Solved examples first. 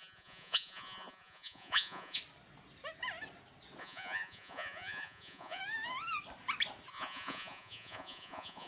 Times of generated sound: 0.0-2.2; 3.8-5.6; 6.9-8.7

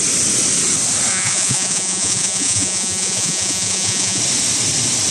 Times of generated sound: 1.1-4.2

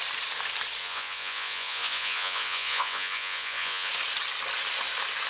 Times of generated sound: 0.8-3.9

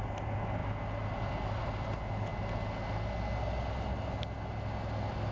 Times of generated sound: none

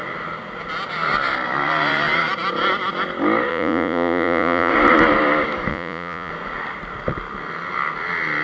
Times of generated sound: 3.5-4.7; 5.7-6.3

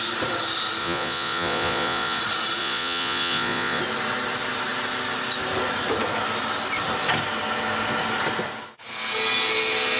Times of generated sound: 0.8-2.2; 2.6-3.8

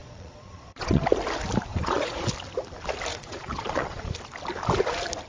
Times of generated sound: 0.0-1.0; 1.7-2.3; 3.1-4.1